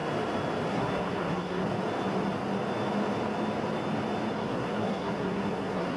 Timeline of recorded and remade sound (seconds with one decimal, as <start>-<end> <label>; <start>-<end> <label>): 0.0-0.7 recorded; 0.7-1.7 remade; 1.7-4.3 recorded; 4.3-6.0 remade

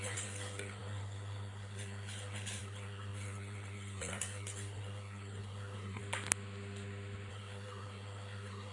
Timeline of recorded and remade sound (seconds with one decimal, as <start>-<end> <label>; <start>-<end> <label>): 0.0-6.0 remade; 6.0-7.3 recorded; 7.3-8.7 remade

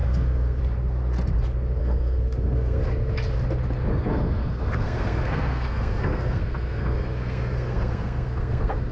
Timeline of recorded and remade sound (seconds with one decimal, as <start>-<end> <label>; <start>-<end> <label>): 0.0-0.6 remade; 0.6-1.8 recorded; 1.8-2.8 remade; 2.8-3.9 recorded; 3.9-8.9 remade

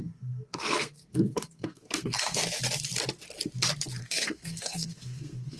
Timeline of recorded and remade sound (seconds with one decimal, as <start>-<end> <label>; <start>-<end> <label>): 0.0-2.4 remade; 2.4-4.0 recorded; 4.0-5.6 remade

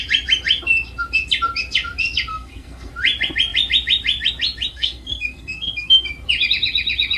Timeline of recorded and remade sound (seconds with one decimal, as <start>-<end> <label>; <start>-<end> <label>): 0.0-2.3 recorded; 2.3-2.9 remade; 2.9-4.7 recorded; 4.7-6.1 remade; 6.1-7.2 recorded